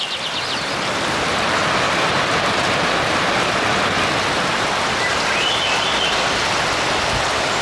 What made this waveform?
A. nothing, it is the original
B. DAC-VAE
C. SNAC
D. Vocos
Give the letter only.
A